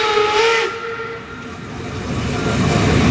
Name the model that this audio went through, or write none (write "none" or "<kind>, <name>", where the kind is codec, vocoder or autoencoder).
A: none